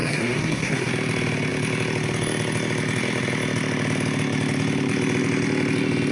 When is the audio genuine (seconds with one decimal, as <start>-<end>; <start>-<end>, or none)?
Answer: 0.9-6.1